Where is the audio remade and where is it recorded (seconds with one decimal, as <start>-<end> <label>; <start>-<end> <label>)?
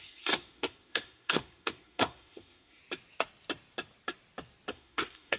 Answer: 0.0-2.8 remade; 2.8-4.7 recorded; 4.7-5.4 remade